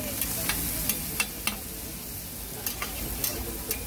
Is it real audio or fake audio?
real